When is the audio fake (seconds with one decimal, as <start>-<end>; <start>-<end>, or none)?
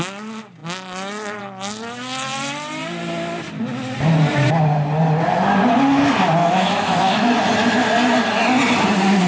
6.4-7.3